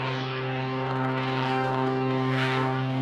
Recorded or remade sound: remade